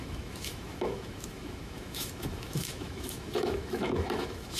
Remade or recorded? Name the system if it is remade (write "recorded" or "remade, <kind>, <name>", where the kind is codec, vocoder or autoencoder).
remade, autoencoder, DAC-VAE